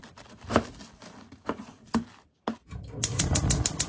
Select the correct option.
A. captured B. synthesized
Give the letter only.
A